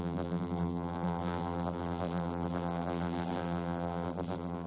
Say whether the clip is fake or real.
fake